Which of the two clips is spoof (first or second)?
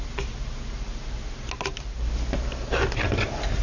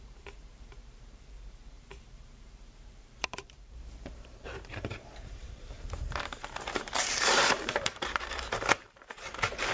second